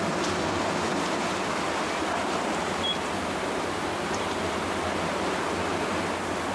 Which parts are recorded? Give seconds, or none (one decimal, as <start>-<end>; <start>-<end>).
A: 0.0-6.5

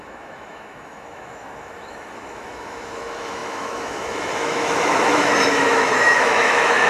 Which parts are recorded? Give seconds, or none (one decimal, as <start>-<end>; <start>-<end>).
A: none

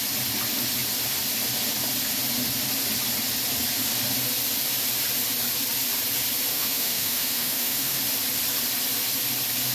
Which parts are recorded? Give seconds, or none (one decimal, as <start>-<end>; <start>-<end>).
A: 0.0-6.5; 8.0-9.7

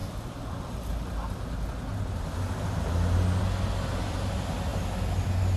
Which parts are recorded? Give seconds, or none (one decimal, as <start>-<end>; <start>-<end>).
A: 0.0-5.6